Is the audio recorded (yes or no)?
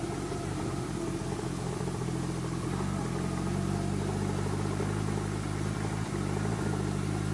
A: yes